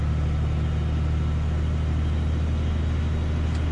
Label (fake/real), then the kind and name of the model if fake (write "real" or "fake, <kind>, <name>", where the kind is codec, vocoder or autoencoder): real